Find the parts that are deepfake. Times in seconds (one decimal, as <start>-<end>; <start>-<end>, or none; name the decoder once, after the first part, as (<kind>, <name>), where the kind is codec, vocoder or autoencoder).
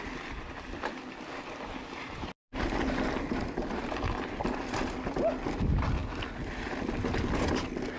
none